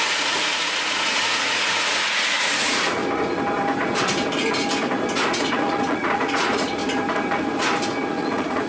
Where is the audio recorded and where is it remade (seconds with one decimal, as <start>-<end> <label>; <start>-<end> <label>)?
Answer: 0.0-3.0 remade; 3.0-5.2 recorded; 5.2-6.8 remade; 6.8-8.1 recorded; 8.1-8.7 remade